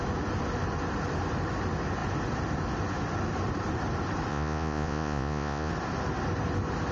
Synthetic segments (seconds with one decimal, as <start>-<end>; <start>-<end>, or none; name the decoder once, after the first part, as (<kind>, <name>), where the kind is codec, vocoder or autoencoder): 4.3-5.7 (vocoder, Vocos)